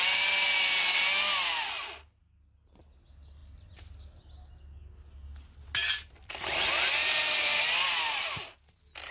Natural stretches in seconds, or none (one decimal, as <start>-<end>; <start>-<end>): 0.0-9.1